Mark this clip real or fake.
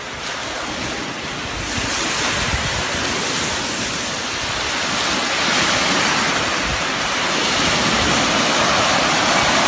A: real